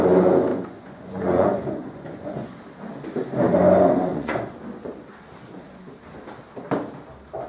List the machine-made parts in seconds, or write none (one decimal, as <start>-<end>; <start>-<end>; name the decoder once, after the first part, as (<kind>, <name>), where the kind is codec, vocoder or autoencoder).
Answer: 0.5-2.6 (vocoder, Vocos); 4.1-4.6

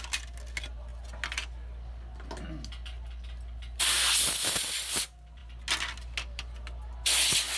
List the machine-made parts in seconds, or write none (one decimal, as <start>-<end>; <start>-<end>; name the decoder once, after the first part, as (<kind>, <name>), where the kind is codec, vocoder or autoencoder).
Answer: none

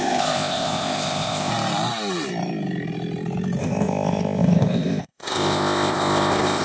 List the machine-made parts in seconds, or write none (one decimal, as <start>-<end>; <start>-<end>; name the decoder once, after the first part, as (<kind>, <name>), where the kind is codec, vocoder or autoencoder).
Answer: 0.0-1.5 (codec, ZipCodec); 3.6-6.6